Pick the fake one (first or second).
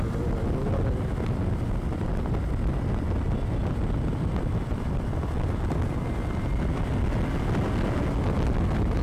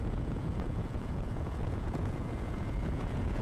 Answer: second